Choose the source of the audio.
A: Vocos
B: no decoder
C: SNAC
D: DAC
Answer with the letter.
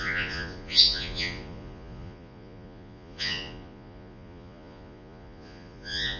A